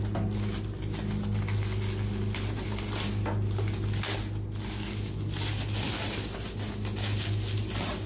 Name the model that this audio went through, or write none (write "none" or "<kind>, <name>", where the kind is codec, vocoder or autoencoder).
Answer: none